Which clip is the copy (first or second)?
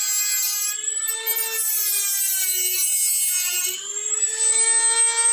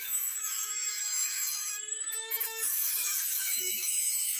second